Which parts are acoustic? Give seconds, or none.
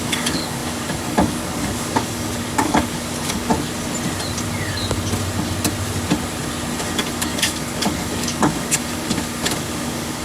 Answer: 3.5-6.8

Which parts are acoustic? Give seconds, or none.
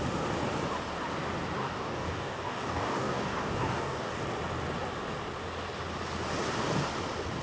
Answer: 0.0-1.6; 4.1-7.4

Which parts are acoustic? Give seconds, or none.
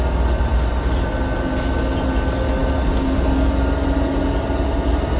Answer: 0.0-5.2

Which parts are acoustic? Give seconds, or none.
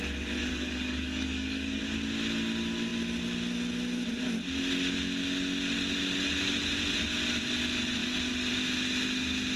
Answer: 0.0-0.5; 1.8-9.6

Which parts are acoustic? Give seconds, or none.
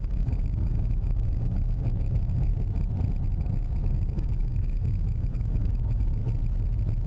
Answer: 2.5-3.4; 6.2-7.1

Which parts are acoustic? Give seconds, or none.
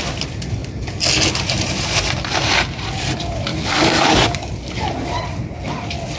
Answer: 0.0-3.5; 4.5-6.2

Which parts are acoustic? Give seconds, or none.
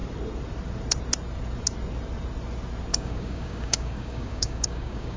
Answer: 0.0-2.9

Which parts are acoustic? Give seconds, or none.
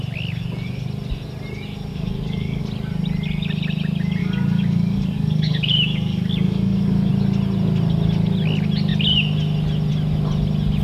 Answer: 0.0-1.9; 2.6-4.2; 7.1-10.8